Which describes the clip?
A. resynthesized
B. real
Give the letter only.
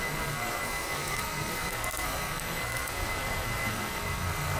A